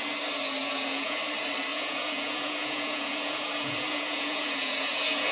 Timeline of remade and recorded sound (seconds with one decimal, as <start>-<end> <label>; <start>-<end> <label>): 0.0-0.6 recorded; 0.6-1.2 remade; 1.2-1.7 recorded; 1.7-5.3 remade